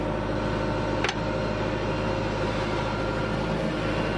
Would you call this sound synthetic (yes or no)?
no